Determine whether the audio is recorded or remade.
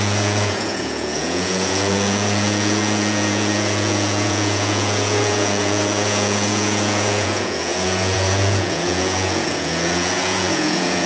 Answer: remade